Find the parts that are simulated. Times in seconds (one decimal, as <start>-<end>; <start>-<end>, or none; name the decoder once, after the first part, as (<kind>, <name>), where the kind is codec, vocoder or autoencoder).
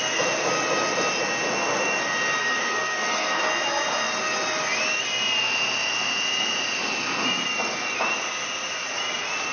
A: 2.4-3.4 (codec, SNAC)